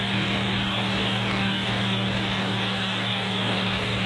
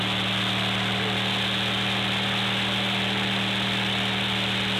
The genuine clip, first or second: second